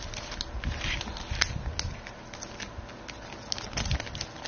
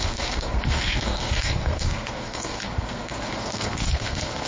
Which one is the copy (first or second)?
second